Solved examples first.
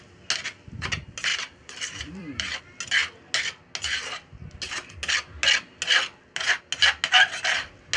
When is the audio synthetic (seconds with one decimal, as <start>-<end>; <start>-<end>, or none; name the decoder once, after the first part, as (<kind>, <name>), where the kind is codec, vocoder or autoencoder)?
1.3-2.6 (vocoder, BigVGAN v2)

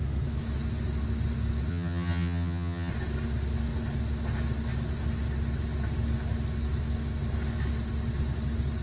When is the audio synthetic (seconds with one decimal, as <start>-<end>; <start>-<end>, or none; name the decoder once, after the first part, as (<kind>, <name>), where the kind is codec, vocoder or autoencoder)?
1.7-2.9 (vocoder, HiFi-GAN)

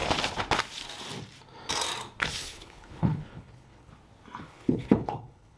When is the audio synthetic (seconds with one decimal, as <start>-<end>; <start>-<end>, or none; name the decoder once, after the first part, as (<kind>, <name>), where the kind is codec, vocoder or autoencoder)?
2.3-3.9 (codec, HILCodec); 4.4-5.6

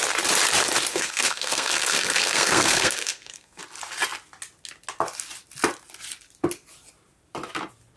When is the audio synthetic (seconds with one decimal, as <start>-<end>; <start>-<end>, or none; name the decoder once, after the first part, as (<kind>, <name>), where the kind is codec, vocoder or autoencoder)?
0.9-3.6 (codec, SNAC)

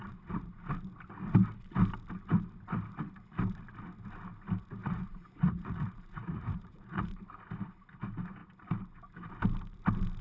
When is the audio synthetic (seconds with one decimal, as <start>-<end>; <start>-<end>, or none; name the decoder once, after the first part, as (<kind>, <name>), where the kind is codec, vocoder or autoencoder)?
0.0-0.6 (vocoder, Vocos); 4.8-7.1